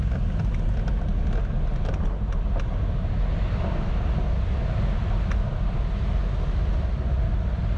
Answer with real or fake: real